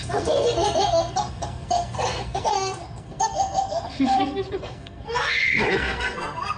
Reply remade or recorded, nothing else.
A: remade